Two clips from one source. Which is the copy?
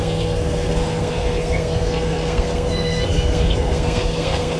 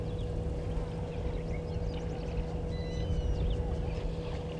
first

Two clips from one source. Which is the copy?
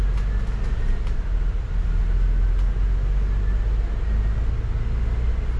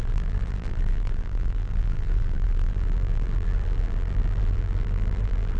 second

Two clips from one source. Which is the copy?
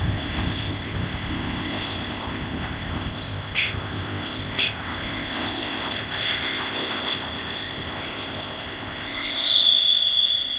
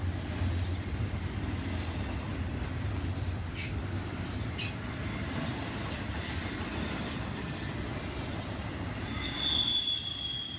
first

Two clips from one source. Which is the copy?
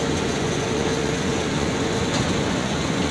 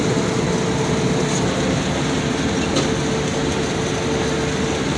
first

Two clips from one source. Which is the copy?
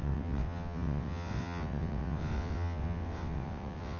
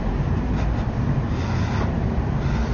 first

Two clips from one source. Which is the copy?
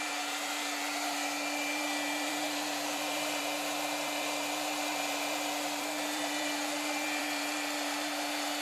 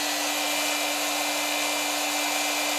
first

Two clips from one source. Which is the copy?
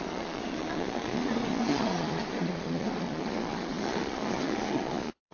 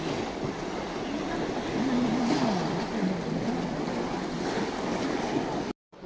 first